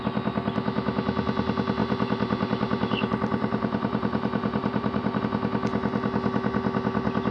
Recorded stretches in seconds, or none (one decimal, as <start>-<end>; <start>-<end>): 0.0-1.8; 5.2-7.3